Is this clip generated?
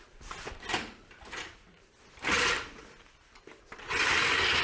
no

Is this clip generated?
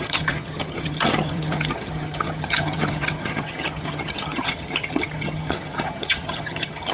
yes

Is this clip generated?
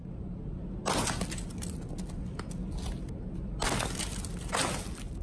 no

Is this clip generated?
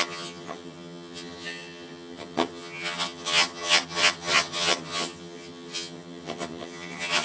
yes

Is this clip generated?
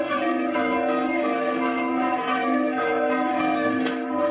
yes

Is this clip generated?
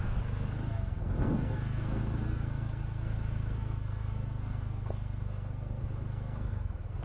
yes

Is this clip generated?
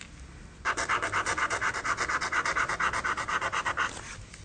no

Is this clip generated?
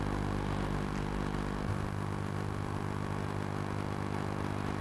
no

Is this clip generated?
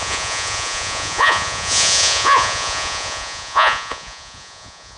yes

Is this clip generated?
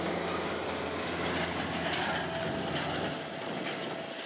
no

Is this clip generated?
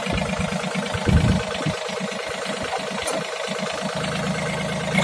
no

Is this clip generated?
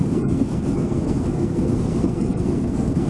yes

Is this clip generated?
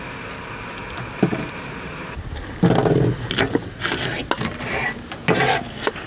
no